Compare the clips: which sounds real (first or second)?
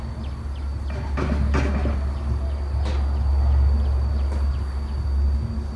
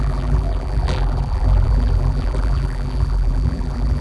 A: first